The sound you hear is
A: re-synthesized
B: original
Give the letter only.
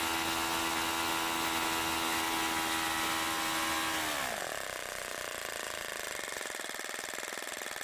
B